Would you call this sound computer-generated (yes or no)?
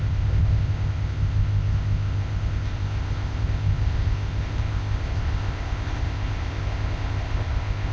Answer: yes